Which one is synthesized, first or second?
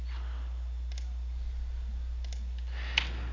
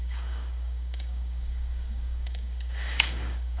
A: second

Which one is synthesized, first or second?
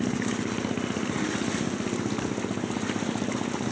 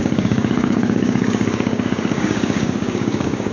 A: second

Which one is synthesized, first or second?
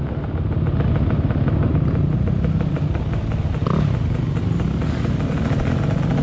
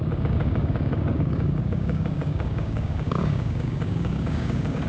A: second